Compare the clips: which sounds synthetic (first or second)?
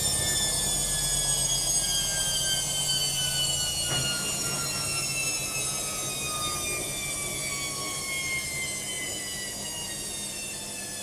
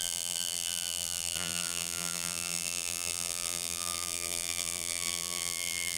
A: second